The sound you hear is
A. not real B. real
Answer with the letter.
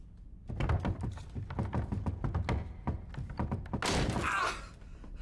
B